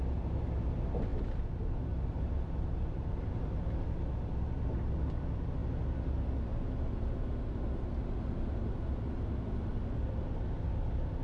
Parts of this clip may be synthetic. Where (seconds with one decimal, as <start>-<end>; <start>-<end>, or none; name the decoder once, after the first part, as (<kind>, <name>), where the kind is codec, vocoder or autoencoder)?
none